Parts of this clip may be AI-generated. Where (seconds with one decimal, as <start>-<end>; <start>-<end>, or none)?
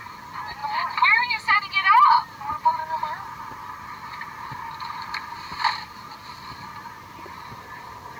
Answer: none